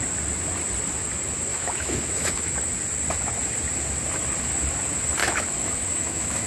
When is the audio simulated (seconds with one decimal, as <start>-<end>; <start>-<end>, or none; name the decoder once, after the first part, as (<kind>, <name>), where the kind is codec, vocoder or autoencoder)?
1.5-2.5 (autoencoder, DAC-VAE); 5.2-6.5